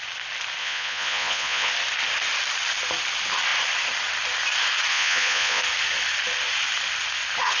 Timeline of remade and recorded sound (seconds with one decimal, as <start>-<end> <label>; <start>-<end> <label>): 0.0-0.6 recorded; 0.6-1.7 remade; 1.7-4.9 recorded; 4.9-5.6 remade; 5.6-7.6 recorded